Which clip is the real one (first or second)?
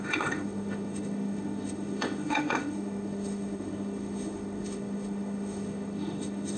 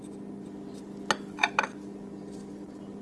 second